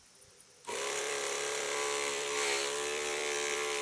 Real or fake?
fake